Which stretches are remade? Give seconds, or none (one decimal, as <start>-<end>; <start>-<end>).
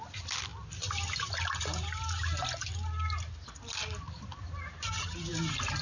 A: none